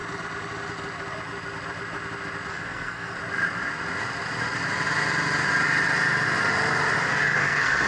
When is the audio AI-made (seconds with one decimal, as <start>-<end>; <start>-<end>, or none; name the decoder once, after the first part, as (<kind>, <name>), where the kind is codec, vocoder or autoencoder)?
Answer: 2.5-3.2 (codec, SNAC); 7.1-7.9